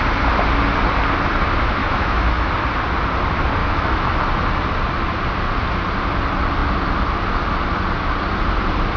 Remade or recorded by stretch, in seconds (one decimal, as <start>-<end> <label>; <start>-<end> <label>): 0.0-1.8 recorded; 1.8-2.5 remade; 2.5-3.6 recorded; 3.6-4.2 remade; 4.2-9.0 recorded